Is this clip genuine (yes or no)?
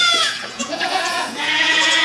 no